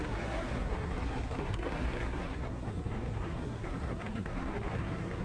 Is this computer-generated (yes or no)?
yes